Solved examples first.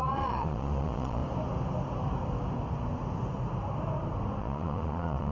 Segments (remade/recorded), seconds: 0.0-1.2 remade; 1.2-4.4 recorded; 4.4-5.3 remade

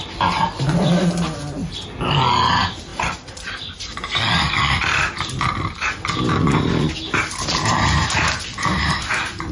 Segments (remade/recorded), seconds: 0.0-9.5 recorded

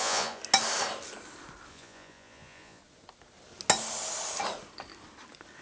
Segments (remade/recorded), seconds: 0.0-0.4 remade; 0.4-1.7 recorded; 1.7-2.8 remade; 2.8-5.6 recorded